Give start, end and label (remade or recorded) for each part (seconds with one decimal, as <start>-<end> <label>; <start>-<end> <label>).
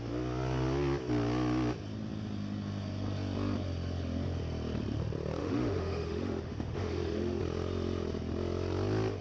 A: 0.0-5.4 recorded; 5.4-7.4 remade; 7.4-9.2 recorded